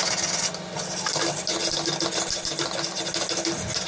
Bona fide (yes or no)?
yes